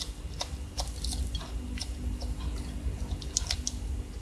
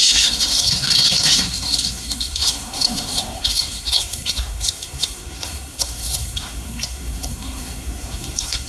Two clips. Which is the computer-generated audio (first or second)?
second